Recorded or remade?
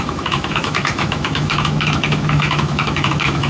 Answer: remade